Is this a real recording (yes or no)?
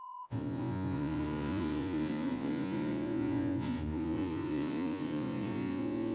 no